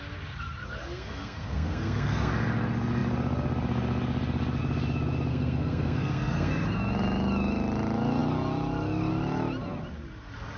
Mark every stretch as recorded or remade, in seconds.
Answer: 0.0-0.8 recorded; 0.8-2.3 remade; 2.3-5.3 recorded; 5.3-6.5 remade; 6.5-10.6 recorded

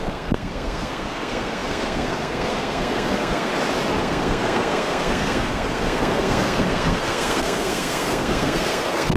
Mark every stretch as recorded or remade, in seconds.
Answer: 0.0-3.5 remade; 3.5-4.0 recorded; 4.0-9.2 remade

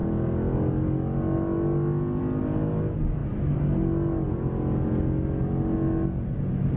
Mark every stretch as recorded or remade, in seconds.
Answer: 0.0-6.8 recorded

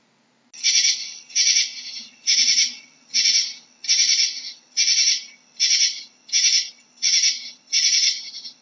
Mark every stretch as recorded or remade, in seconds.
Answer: 0.0-8.6 recorded

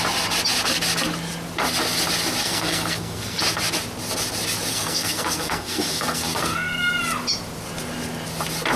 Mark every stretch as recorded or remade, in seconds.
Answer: 0.0-2.4 recorded; 2.4-3.4 remade; 3.4-4.7 recorded; 4.7-6.9 remade; 6.9-8.8 recorded

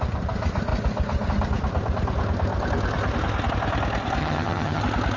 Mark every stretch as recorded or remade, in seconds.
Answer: 0.0-4.2 recorded; 4.2-4.8 remade; 4.8-5.2 recorded